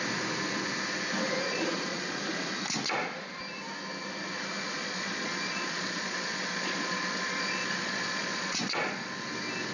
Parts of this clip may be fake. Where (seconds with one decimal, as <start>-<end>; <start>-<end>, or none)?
1.4-2.2; 4.8-9.2